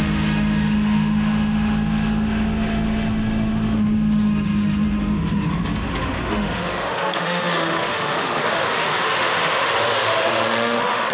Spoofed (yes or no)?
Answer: yes